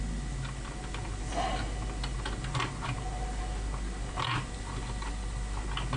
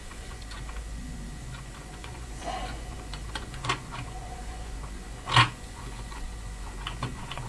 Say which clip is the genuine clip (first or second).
first